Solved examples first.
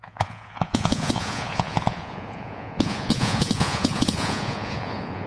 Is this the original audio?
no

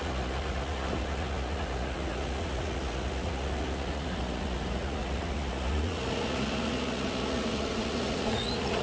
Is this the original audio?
no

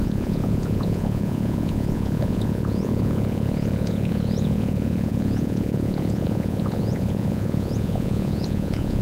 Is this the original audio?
no